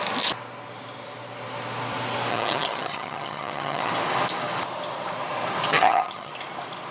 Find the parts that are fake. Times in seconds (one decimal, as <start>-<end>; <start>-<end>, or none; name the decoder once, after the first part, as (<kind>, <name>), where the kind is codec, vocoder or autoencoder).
2.3-3.9 (vocoder, HiFi-GAN); 5.7-6.3